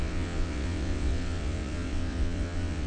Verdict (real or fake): fake